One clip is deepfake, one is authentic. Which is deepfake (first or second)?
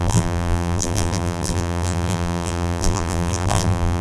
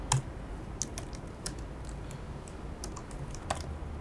first